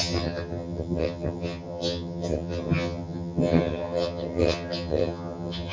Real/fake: fake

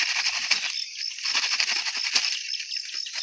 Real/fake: real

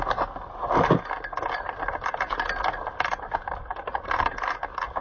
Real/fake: real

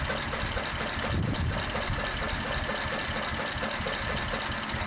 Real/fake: real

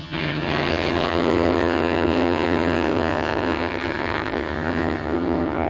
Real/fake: fake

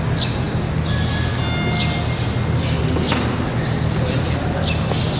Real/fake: real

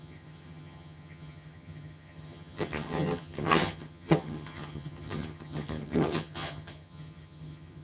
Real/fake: fake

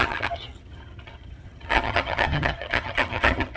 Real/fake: fake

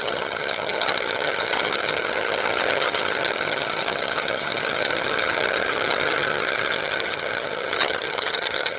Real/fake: fake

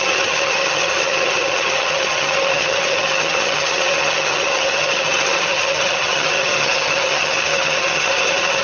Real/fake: fake